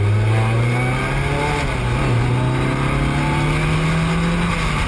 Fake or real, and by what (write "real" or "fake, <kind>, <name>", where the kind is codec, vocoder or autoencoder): real